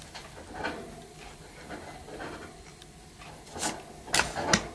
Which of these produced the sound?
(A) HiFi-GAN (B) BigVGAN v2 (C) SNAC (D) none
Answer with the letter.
D